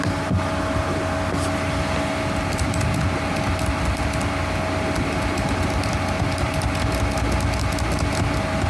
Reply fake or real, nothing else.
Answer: real